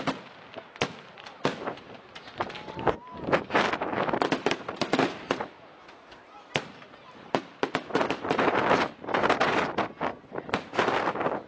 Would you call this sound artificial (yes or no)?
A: no